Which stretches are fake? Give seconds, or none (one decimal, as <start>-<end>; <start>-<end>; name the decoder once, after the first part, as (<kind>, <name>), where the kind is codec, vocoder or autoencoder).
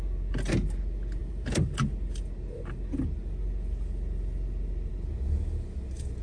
none